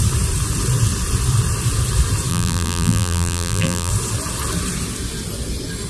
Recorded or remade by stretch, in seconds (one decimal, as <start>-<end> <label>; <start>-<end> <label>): 0.0-2.3 recorded; 2.3-3.9 remade; 3.9-5.9 recorded